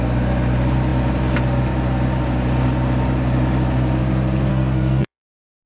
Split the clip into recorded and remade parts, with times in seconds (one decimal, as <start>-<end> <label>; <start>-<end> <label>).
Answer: 0.0-4.5 recorded; 4.5-5.3 remade; 5.3-5.7 recorded